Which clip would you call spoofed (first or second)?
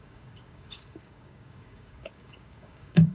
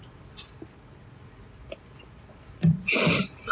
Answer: first